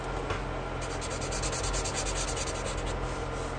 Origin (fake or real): real